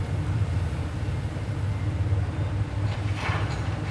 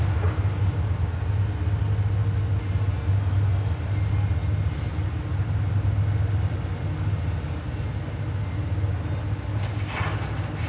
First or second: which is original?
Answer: second